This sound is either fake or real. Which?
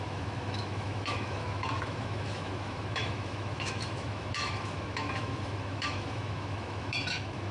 fake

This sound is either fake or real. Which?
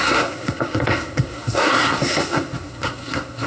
fake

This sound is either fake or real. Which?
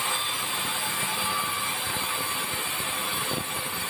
real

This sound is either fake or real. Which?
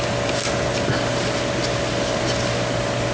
real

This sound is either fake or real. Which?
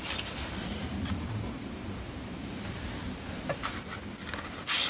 fake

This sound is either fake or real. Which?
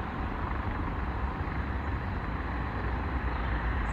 fake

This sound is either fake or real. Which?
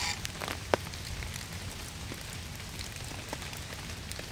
real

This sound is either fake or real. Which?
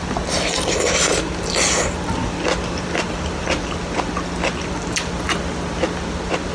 real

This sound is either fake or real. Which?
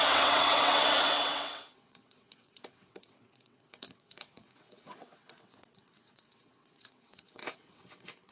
fake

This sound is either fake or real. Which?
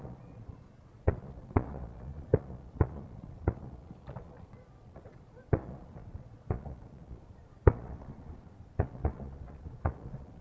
fake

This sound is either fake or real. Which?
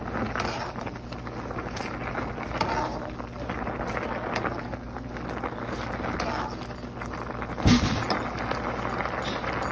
real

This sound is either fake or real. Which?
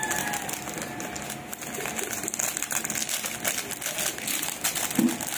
real